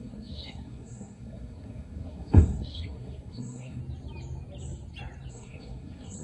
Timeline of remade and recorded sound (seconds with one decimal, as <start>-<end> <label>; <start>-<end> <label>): 0.0-3.8 remade; 3.8-5.3 recorded; 5.3-6.2 remade